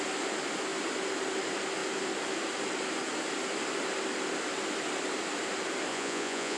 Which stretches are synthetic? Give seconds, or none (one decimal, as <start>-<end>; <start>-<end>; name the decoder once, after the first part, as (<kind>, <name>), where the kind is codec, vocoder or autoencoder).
5.9-6.6 (vocoder, Vocos)